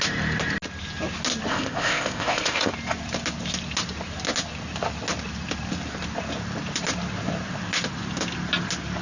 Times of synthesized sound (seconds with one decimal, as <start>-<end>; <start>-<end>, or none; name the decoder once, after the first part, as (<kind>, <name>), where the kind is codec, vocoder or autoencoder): 1.5-2.7 (codec, ZipCodec)